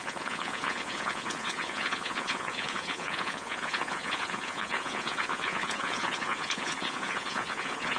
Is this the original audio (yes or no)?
no